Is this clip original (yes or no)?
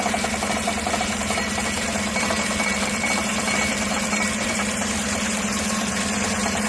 no